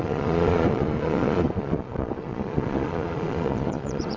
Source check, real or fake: fake